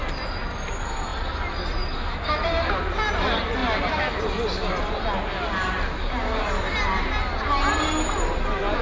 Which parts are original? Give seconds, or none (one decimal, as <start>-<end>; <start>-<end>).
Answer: 0.0-8.8